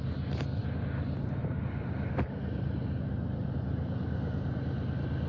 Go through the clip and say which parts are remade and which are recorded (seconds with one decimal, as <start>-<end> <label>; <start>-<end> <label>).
0.0-1.4 recorded; 1.4-4.6 remade; 4.6-5.3 recorded